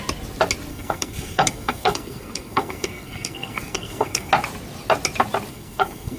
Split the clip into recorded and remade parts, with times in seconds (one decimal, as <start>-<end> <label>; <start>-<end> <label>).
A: 0.0-0.7 recorded; 0.7-4.3 remade; 4.3-5.5 recorded; 5.5-6.2 remade